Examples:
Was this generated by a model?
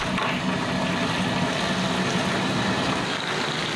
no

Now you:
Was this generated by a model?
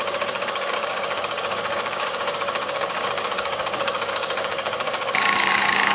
yes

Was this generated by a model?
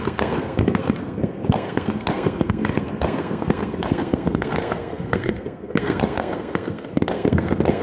yes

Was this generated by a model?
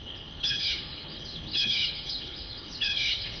yes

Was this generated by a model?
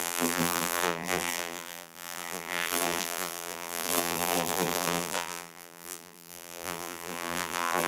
yes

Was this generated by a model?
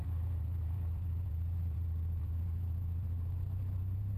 yes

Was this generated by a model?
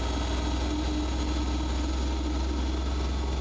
no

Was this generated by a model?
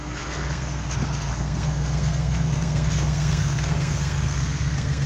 yes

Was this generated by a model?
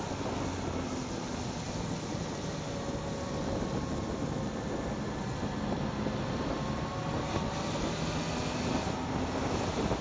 no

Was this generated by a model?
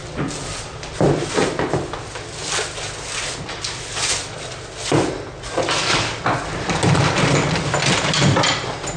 no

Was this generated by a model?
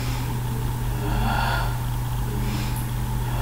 no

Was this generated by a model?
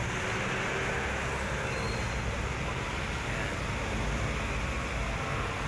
no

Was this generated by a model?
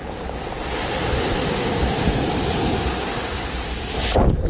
no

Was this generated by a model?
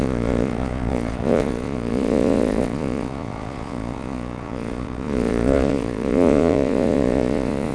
yes